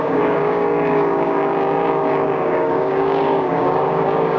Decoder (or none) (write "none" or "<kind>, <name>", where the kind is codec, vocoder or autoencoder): codec, DAC